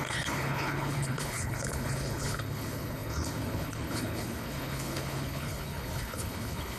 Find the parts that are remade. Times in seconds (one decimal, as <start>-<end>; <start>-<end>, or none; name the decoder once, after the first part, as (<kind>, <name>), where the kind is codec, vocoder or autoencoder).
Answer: 0.0-6.8 (codec, HILCodec)